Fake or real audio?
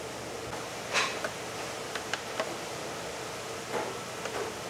real